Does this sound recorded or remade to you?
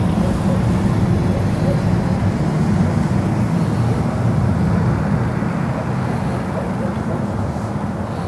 recorded